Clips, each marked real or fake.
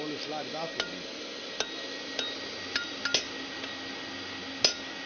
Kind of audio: real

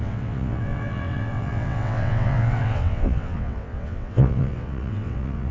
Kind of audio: fake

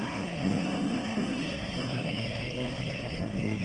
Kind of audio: fake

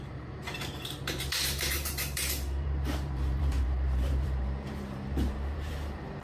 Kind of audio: fake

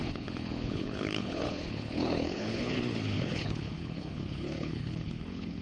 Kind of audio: fake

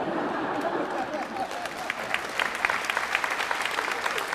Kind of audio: real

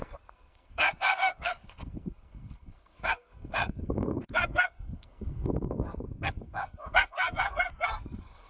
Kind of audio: fake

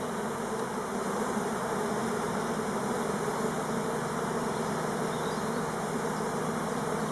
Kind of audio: real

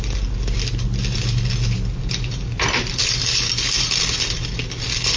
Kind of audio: real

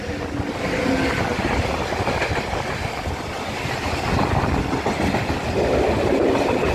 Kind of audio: real